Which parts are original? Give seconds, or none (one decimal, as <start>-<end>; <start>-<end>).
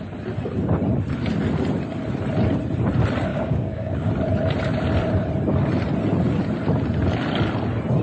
0.0-3.3; 4.1-8.0